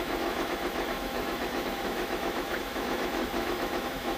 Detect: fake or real fake